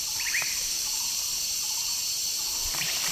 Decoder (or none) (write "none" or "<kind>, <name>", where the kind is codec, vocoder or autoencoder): vocoder, BigVGAN v2